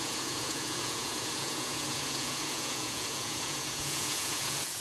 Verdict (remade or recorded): remade